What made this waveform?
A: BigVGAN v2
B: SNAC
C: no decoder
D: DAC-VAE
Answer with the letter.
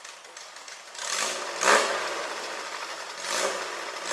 C